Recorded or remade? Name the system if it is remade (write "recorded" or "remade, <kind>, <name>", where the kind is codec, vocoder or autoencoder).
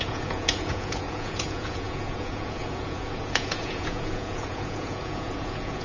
remade, vocoder, Vocos